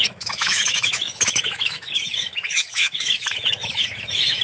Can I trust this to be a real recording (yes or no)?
no